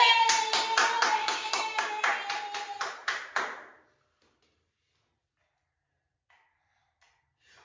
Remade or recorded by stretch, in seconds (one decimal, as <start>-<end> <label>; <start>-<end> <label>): 0.0-1.2 recorded; 1.2-2.0 remade; 2.0-7.6 recorded